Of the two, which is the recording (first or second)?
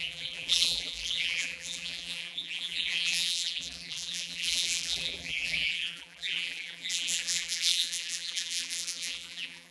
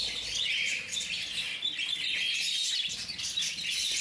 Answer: second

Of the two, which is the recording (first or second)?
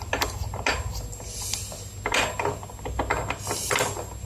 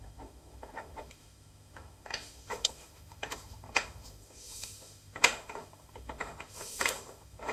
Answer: first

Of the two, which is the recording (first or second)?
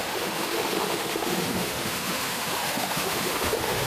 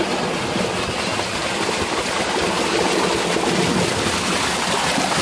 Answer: second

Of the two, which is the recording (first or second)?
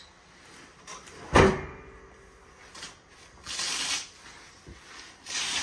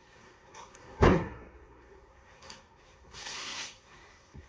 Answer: first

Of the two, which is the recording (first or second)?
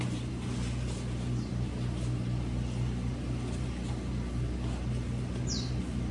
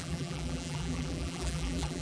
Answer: first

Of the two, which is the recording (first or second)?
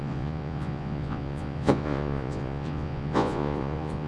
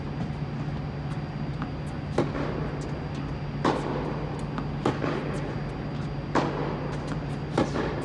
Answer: second